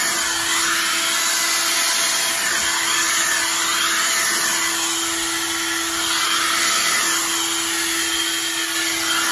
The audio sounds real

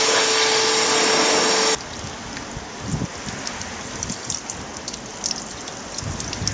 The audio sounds real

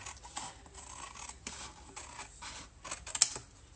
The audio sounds real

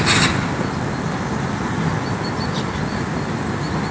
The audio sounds real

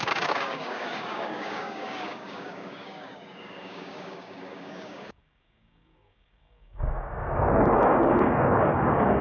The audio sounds fake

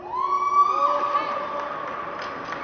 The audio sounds real